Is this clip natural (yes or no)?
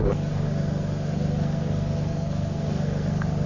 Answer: no